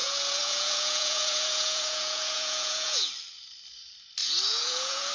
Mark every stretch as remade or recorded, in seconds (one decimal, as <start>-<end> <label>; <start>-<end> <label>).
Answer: 0.0-3.1 remade; 3.1-4.2 recorded; 4.2-5.1 remade